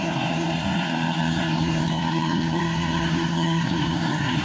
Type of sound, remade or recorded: remade